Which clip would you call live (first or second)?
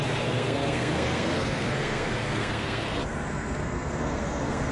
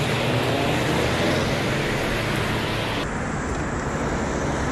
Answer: second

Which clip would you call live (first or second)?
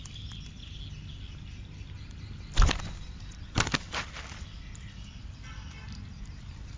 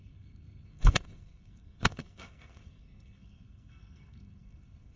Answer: first